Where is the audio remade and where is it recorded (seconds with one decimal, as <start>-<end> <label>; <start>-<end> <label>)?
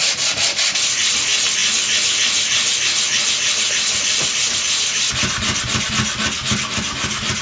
0.0-7.4 recorded